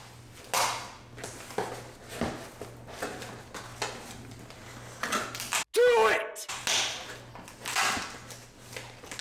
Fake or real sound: real